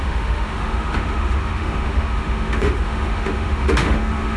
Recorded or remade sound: remade